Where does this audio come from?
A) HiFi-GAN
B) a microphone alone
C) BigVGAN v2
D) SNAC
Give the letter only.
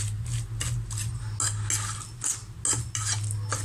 B